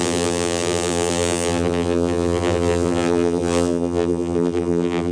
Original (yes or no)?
no